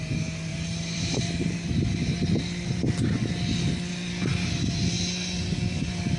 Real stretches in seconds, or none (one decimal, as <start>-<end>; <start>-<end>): 0.0-0.5; 1.5-6.2